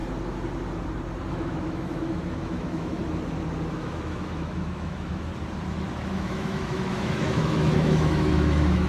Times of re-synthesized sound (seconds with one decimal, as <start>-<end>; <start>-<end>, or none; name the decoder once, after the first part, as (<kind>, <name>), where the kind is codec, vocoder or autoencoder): 1.3-3.0 (autoencoder, DAC-VAE); 3.7-5.3; 6.1-8.9